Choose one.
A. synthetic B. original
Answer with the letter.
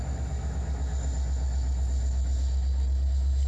B